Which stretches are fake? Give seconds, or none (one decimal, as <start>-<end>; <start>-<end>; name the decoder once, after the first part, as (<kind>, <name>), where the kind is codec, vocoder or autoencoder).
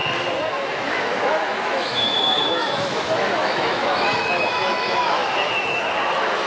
0.5-6.5 (autoencoder, DAC-VAE)